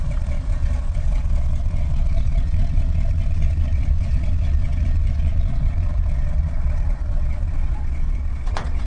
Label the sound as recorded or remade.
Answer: remade